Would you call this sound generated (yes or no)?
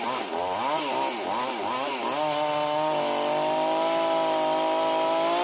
no